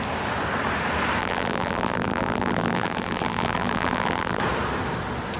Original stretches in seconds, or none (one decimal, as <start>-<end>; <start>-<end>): 0.0-1.2; 4.4-5.4